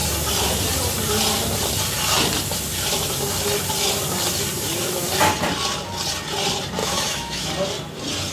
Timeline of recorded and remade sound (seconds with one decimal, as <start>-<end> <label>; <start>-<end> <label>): 0.0-6.8 recorded; 6.8-7.5 remade; 7.5-8.3 recorded